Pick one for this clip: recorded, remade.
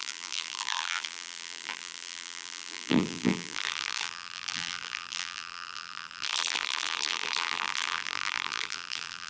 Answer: remade